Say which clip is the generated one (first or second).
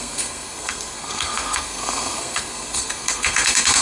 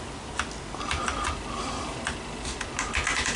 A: first